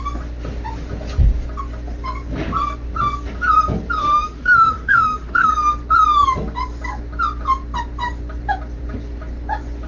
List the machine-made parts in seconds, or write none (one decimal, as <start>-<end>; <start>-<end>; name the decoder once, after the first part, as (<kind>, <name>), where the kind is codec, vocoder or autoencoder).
4.0-5.5 (autoencoder, DAC-VAE)